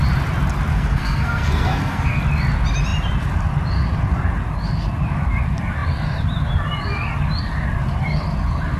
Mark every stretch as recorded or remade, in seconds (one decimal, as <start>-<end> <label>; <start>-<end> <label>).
0.0-0.7 recorded; 0.7-2.2 remade; 2.2-8.8 recorded